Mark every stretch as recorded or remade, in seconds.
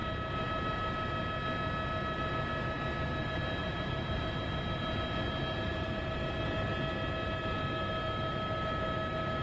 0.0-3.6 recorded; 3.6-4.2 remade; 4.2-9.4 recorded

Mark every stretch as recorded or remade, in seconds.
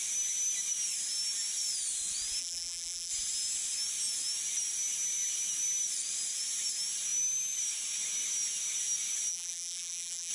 0.0-2.4 recorded; 2.4-3.1 remade; 3.1-9.3 recorded; 9.3-10.3 remade